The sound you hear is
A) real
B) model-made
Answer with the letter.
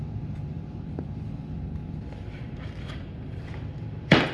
B